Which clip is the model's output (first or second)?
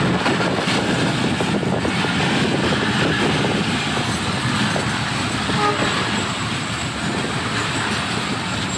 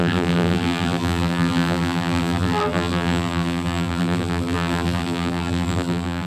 second